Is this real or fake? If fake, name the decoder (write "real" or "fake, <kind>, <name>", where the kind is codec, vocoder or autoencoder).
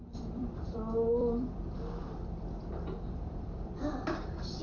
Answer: fake, vocoder, BigVGAN v2